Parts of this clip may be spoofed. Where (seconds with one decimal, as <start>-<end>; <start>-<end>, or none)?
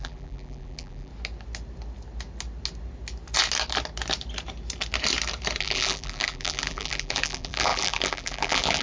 0.0-1.1; 5.6-8.8